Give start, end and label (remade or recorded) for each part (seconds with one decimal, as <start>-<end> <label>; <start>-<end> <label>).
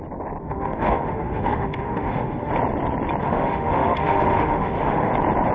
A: 0.0-0.4 recorded; 0.4-2.5 remade; 2.5-3.2 recorded; 3.2-5.1 remade; 5.1-5.5 recorded